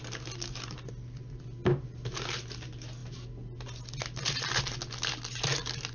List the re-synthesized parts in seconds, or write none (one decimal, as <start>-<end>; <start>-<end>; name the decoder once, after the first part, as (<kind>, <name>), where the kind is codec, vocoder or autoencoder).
none